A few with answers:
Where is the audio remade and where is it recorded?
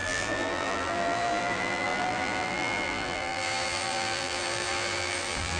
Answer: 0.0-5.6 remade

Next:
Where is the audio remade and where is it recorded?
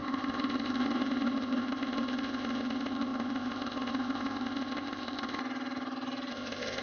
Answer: 0.0-5.4 remade; 5.4-6.3 recorded; 6.3-6.8 remade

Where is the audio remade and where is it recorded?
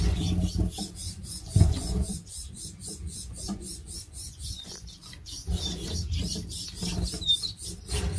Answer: 0.0-1.0 recorded; 1.0-5.5 remade; 5.5-8.2 recorded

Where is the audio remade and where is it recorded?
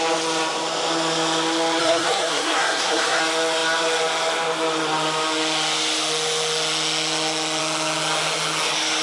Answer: 0.0-1.8 recorded; 1.8-3.2 remade; 3.2-9.0 recorded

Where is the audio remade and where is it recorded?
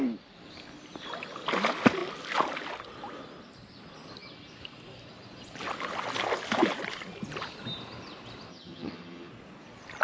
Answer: 0.0-8.5 recorded; 8.5-9.3 remade; 9.3-10.0 recorded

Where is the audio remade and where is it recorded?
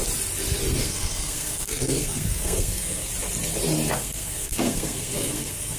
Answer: 0.0-0.8 recorded; 0.8-3.1 remade; 3.1-3.9 recorded; 3.9-5.8 remade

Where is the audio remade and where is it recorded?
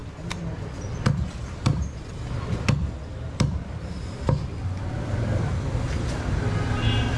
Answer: 0.0-7.2 recorded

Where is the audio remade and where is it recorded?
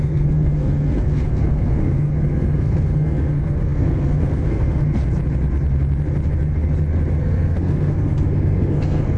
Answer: 0.0-5.0 remade; 5.0-7.2 recorded; 7.2-9.2 remade